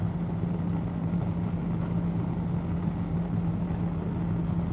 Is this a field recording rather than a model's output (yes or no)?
yes